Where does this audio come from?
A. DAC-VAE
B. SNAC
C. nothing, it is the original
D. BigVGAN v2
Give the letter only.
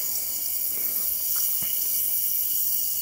C